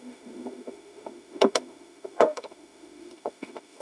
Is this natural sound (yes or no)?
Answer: no